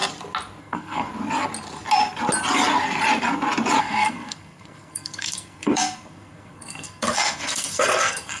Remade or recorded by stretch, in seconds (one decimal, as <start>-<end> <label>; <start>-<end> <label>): 0.0-0.6 recorded; 0.6-1.1 remade; 1.1-3.8 recorded; 3.8-8.4 remade